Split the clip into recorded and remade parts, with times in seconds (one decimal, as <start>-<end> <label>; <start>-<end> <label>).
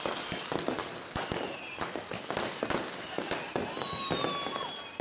0.0-5.0 recorded